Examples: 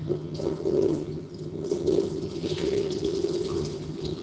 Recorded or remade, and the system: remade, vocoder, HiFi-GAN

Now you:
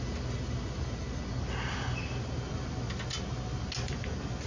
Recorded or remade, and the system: recorded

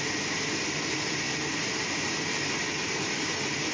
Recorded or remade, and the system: recorded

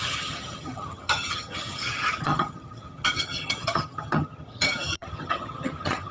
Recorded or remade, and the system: remade, vocoder, HiFi-GAN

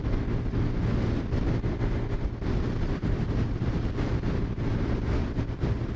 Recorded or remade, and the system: recorded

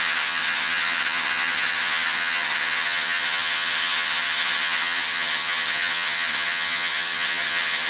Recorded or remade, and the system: remade, vocoder, HiFi-GAN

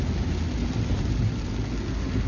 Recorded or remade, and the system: recorded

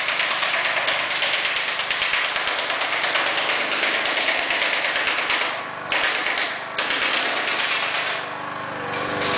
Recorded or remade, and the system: recorded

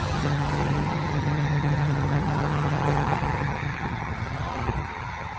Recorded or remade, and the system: remade, vocoder, HiFi-GAN